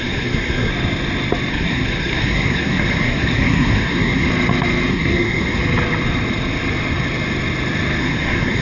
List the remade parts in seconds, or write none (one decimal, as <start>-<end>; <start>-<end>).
0.0-0.7; 1.5-4.3; 4.9-5.6; 8.0-8.6